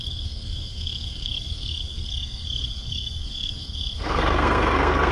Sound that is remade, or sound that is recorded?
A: remade